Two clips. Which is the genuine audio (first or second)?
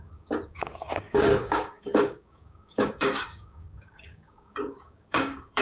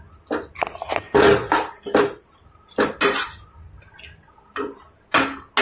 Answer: second